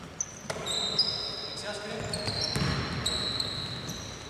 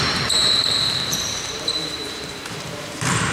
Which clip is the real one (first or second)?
first